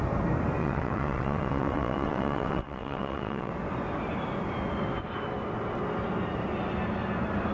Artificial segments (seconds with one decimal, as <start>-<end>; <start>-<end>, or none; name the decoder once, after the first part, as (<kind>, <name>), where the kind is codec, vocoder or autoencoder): 0.6-3.5 (vocoder, WaveNeXt)